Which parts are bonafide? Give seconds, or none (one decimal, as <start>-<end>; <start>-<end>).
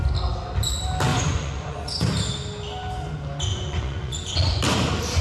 0.0-1.1; 2.1-3.5; 4.6-5.2